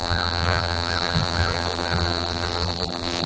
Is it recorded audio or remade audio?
remade